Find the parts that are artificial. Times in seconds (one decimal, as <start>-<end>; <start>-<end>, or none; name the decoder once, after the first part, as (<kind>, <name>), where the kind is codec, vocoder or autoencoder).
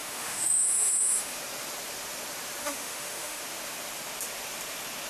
0.0-1.4 (autoencoder, DAC-VAE); 2.6-3.4